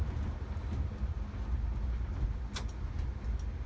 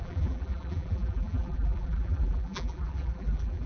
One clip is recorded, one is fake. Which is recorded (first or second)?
first